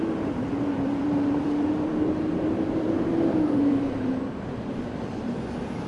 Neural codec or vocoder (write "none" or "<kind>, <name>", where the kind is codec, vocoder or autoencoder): vocoder, BigVGAN v2